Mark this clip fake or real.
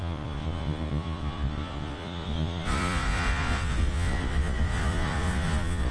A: fake